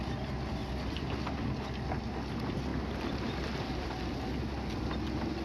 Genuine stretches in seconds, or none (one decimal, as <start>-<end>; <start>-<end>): 0.0-5.4